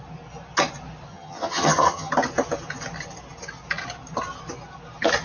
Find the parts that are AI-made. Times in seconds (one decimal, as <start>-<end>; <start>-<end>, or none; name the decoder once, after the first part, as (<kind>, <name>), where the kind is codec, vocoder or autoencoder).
1.1-2.1 (vocoder, HiFi-GAN)